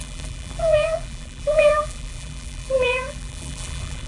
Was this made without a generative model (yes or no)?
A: no